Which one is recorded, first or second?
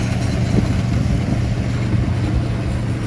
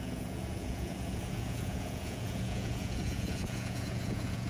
first